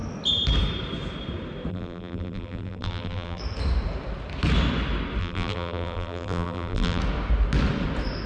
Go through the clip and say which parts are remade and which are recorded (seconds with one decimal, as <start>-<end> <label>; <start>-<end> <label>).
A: 0.0-1.7 recorded; 1.7-3.4 remade; 3.4-5.2 recorded; 5.2-7.0 remade; 7.0-8.3 recorded